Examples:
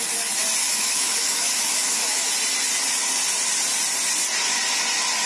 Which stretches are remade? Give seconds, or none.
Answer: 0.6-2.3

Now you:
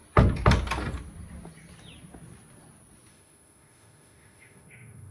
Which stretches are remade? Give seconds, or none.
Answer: 3.1-5.1

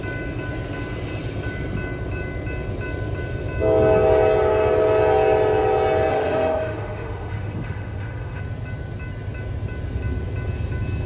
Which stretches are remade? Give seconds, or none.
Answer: 6.1-8.4

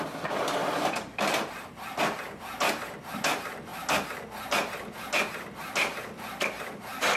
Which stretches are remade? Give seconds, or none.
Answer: none

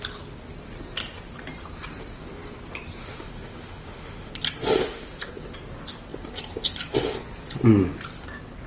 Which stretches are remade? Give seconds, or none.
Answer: 3.0-4.3; 4.8-5.3